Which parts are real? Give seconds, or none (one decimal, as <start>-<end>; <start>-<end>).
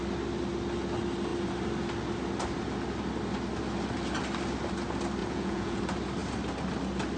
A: 0.0-5.2; 5.8-7.2